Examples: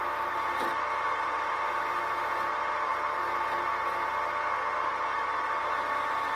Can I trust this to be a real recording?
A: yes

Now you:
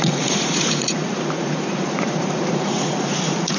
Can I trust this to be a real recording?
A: no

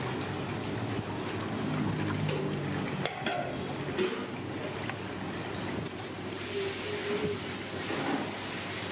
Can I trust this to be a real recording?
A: yes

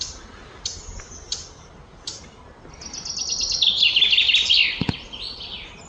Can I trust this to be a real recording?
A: yes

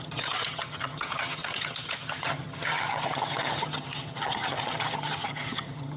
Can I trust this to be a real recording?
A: no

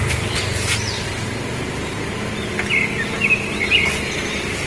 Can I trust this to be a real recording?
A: yes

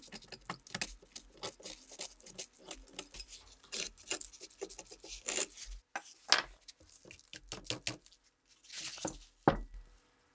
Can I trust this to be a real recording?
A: yes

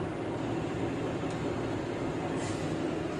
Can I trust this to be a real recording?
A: yes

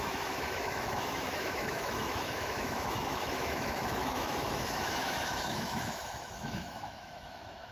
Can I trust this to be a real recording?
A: no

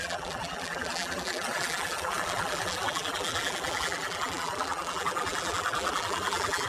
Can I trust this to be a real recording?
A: no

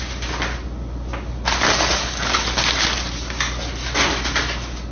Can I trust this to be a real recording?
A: yes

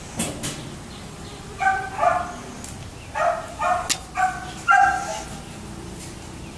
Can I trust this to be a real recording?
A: yes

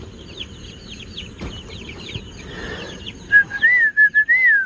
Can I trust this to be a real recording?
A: yes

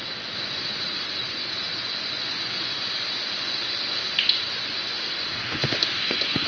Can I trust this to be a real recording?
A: no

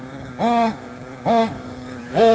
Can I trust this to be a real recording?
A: no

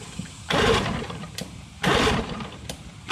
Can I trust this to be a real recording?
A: no